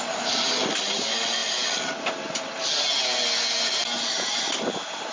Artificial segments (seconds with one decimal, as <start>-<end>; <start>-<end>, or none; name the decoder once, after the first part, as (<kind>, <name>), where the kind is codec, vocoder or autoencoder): none